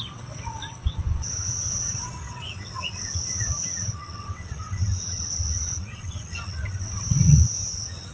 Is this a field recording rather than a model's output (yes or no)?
no